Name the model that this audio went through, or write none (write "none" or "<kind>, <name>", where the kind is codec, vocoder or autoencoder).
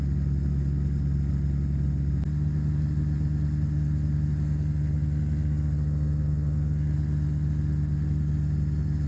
none